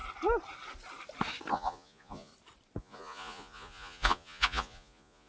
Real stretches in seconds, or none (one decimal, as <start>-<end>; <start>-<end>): 0.0-1.5; 2.3-2.8